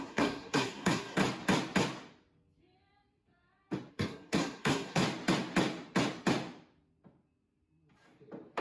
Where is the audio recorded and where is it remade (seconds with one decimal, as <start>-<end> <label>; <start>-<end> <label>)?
0.0-1.2 remade; 1.2-3.9 recorded; 3.9-5.0 remade; 5.0-8.6 recorded